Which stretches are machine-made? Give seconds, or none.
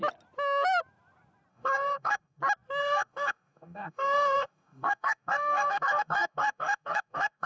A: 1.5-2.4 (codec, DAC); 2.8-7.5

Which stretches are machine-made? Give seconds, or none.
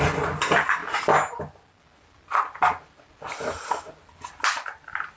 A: none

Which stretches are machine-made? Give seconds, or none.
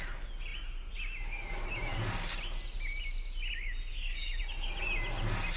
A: 3.9-4.4 (codec, DAC)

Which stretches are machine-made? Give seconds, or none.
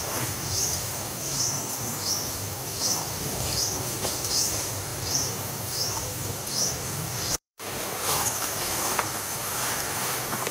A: 0.0-10.5 (codec, DAC)